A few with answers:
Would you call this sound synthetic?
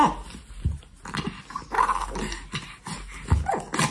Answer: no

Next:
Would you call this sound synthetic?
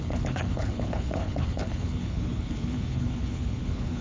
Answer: yes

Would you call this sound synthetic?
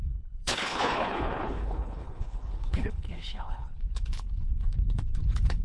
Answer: yes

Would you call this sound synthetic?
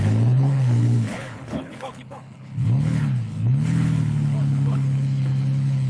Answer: yes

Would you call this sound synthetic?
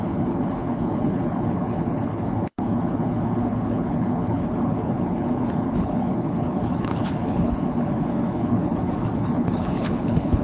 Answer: yes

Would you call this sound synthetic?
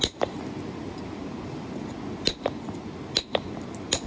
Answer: no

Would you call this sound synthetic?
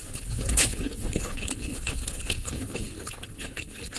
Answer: yes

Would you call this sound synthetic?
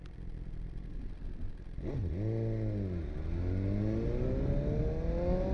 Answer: no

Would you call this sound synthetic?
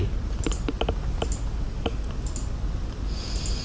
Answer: no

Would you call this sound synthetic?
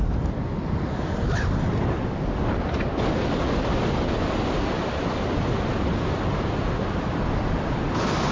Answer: no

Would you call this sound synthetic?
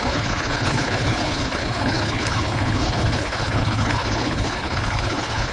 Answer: yes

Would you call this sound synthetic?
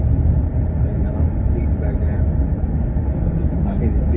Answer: no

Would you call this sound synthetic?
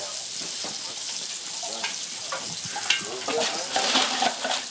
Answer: no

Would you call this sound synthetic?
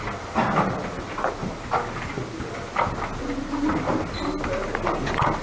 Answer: no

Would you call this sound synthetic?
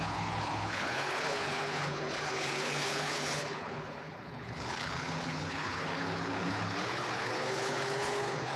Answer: yes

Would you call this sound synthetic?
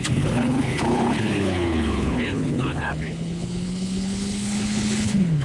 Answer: yes